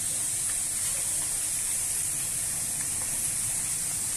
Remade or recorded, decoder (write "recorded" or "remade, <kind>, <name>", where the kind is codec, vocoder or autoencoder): recorded